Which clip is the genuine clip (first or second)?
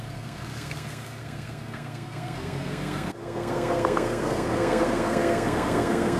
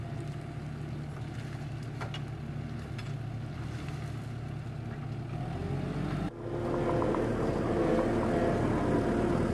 second